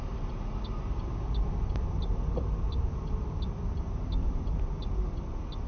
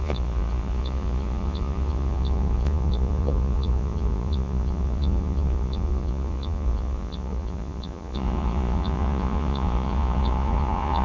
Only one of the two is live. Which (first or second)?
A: first